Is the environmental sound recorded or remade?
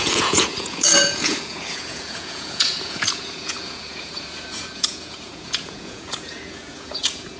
remade